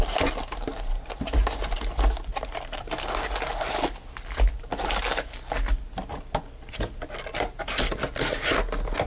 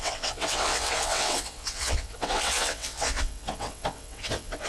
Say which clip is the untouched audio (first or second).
first